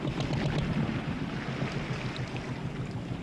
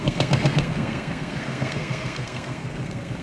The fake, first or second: second